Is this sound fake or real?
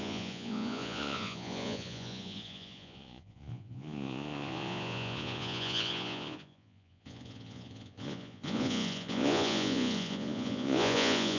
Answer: fake